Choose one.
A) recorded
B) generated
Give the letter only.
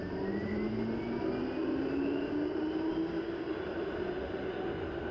A